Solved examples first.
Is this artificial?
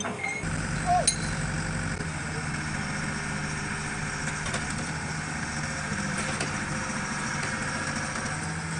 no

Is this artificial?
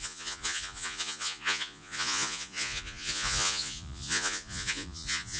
yes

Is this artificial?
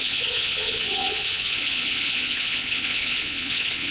yes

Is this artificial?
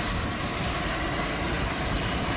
no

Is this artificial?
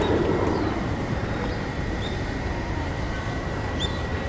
yes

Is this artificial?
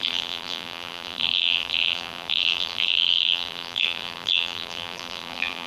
yes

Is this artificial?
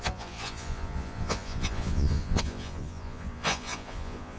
yes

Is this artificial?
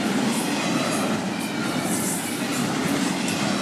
no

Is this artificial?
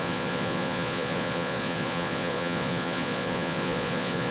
yes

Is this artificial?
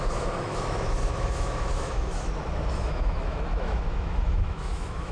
yes